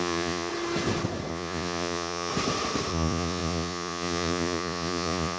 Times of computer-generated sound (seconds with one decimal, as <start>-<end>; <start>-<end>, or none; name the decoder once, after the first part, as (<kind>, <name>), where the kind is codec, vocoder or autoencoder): 0.0-0.5 (vocoder, Vocos); 1.3-2.3; 2.9-5.4